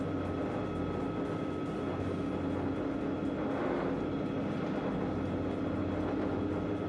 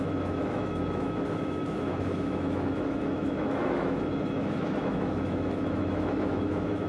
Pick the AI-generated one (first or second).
second